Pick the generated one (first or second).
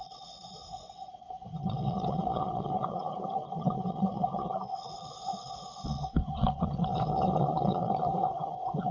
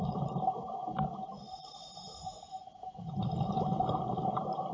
first